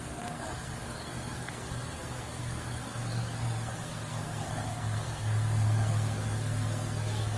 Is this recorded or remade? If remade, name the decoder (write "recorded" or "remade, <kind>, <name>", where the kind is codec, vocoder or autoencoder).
remade, codec, SNAC